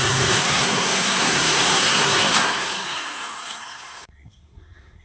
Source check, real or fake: fake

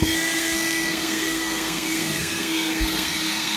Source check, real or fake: fake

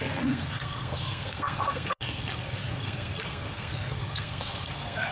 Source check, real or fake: fake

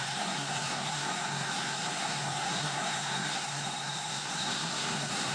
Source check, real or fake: fake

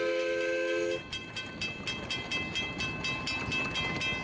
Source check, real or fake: real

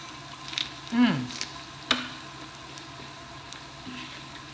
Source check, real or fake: real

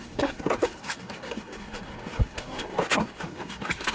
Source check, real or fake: fake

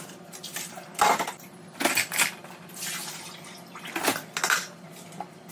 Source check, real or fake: real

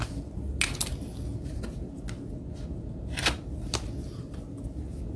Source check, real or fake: real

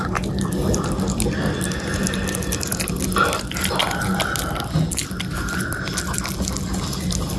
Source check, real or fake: real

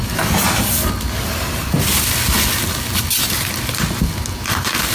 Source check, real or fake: real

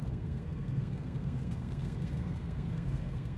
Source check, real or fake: fake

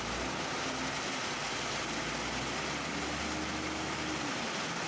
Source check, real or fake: real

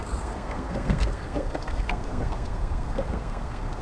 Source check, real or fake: fake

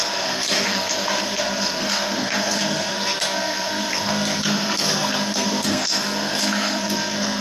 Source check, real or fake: fake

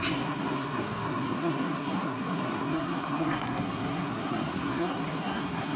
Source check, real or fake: fake